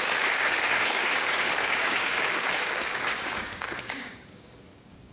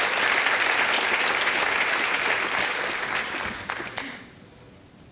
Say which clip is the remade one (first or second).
first